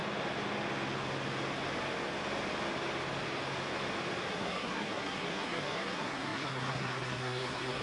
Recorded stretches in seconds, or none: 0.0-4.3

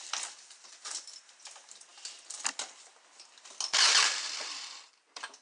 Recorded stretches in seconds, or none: 1.9-4.5

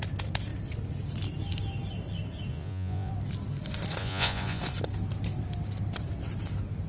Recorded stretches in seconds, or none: 0.0-2.5; 3.1-4.0; 4.6-6.9